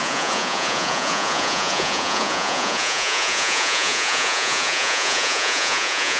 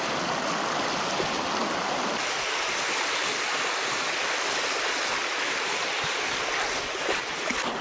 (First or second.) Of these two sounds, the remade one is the first